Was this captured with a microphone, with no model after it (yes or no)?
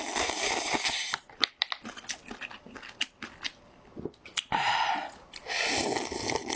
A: yes